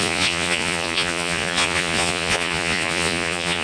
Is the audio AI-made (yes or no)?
yes